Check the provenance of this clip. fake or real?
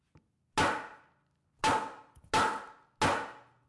real